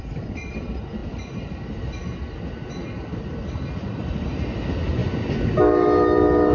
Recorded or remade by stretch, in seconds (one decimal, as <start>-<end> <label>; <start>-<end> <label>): 0.0-6.5 recorded